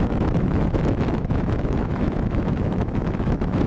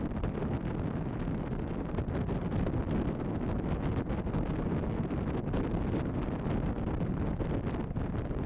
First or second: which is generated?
first